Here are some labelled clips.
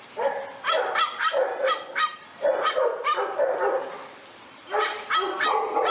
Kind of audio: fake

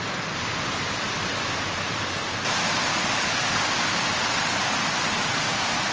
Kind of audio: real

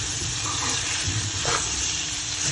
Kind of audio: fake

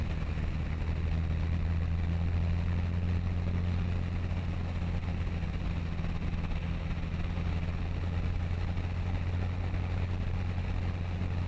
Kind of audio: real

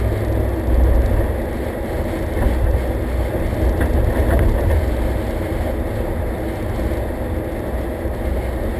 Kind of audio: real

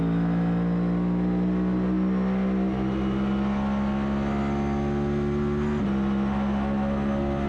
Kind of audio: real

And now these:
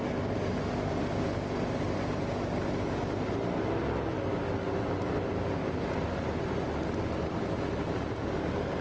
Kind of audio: real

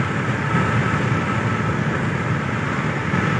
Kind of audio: real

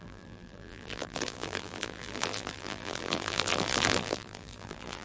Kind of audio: fake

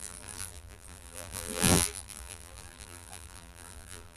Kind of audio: fake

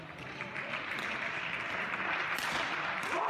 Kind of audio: real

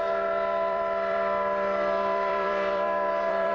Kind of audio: fake